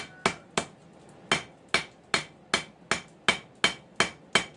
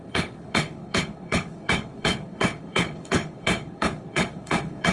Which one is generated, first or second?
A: second